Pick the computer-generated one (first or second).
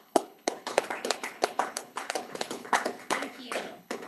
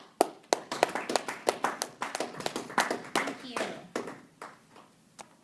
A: first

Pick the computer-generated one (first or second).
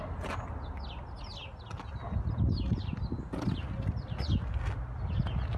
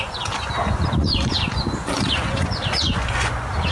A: second